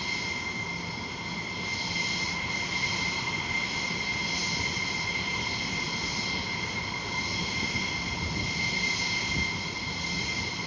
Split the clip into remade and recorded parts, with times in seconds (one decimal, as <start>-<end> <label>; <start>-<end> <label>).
0.0-10.7 recorded